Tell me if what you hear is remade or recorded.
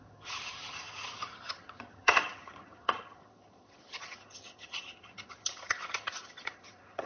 remade